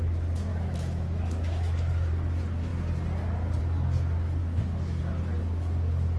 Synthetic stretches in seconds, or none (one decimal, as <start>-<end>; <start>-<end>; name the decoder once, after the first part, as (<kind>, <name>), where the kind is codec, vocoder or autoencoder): 0.5-2.1 (autoencoder, DAC-VAE); 4.4-5.0